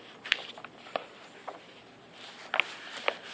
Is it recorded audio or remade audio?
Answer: recorded